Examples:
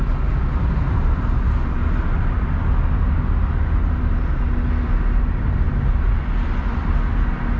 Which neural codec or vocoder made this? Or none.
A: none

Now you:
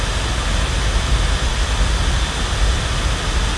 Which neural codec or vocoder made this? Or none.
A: none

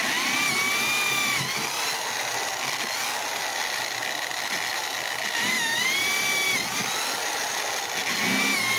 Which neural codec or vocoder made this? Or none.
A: none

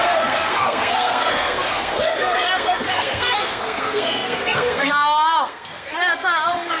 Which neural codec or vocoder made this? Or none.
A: codec, SNAC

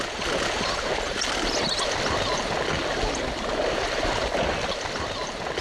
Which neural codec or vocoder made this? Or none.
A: none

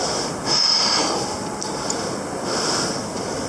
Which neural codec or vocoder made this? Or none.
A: none